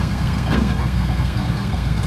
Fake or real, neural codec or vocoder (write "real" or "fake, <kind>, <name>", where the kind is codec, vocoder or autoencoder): fake, codec, SNAC